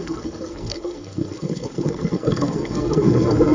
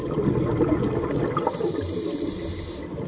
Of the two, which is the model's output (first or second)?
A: first